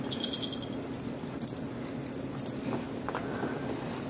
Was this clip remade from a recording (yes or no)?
no